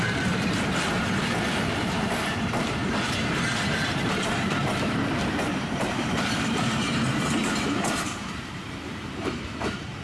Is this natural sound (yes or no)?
no